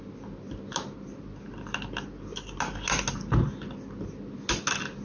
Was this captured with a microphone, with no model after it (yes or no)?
yes